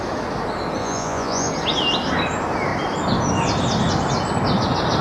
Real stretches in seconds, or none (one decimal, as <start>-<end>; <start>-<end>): 0.0-0.8; 1.5-5.0